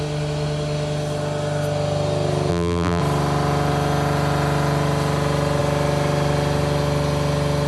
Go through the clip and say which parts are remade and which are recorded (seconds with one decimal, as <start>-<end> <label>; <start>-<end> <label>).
0.0-2.5 recorded; 2.5-3.0 remade; 3.0-7.7 recorded